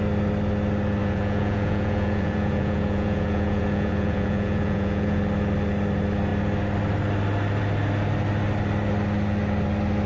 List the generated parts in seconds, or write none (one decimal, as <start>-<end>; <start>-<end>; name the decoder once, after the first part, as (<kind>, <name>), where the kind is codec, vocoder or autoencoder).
1.0-5.2 (vocoder, Vocos)